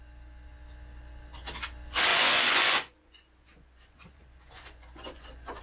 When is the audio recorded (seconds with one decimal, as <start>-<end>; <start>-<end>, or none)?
0.0-2.1